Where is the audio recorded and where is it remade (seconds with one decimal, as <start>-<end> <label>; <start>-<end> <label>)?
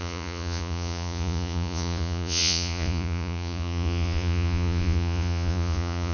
0.0-6.1 remade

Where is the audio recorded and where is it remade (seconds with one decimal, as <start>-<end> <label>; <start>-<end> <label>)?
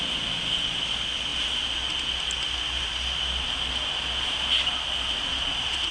0.0-5.3 recorded; 5.3-5.9 remade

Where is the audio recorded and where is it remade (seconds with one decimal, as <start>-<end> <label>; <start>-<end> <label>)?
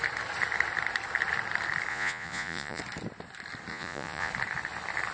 0.0-1.9 recorded; 1.9-2.8 remade; 2.8-3.7 recorded; 3.7-4.3 remade; 4.3-5.1 recorded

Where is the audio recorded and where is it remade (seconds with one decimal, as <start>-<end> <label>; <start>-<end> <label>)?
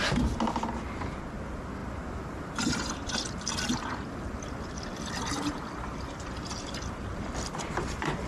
0.0-8.3 recorded